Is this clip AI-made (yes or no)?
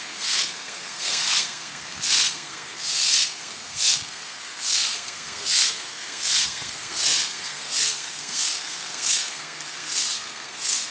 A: yes